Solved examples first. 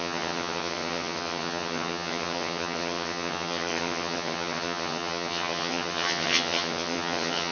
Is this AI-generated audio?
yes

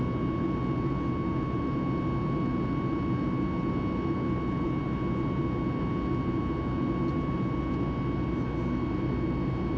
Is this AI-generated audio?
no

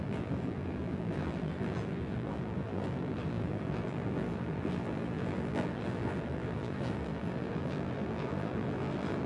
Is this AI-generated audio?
yes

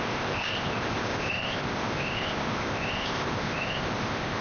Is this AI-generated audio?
yes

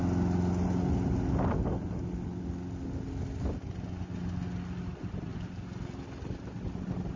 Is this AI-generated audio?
no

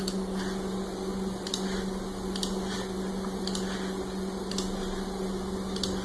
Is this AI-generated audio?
no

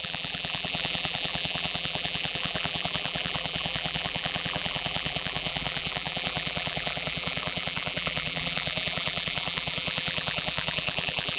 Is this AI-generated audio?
yes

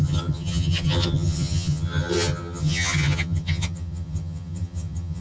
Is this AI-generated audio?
yes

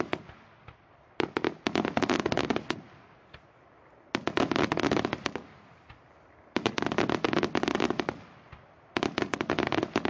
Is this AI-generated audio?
no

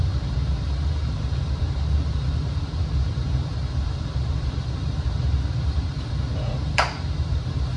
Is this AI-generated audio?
yes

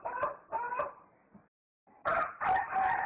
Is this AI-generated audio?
yes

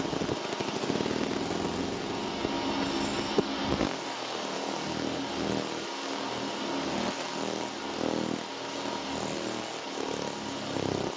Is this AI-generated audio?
no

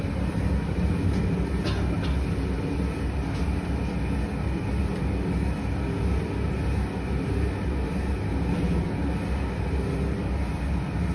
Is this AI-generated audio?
no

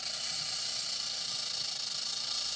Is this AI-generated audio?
no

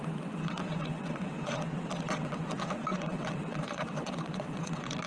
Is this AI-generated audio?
yes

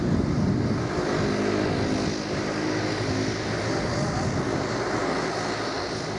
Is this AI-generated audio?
no